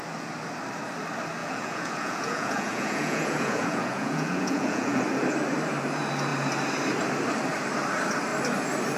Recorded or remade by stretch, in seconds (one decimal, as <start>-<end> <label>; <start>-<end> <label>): 0.0-1.4 recorded; 1.4-5.0 remade; 5.0-9.0 recorded